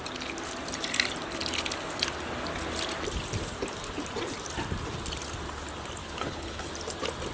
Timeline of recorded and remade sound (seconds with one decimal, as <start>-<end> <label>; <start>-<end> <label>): 0.0-6.0 recorded; 6.0-6.7 remade; 6.7-7.3 recorded